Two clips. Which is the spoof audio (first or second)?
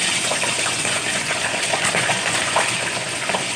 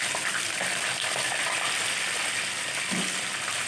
first